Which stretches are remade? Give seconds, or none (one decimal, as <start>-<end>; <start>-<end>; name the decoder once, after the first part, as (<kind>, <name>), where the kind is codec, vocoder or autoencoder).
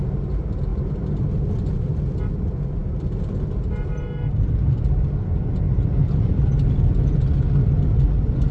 none